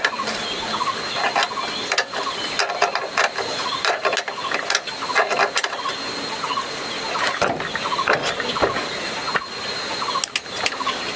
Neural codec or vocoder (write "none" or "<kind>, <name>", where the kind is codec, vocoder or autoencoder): none